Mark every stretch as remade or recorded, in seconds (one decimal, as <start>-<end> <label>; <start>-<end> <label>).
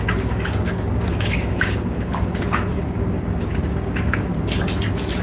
0.0-4.3 remade; 4.3-5.2 recorded